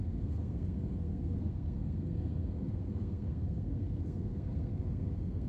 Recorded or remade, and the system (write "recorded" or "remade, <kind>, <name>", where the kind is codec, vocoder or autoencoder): remade, codec, SNAC